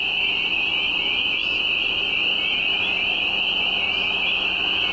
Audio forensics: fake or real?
real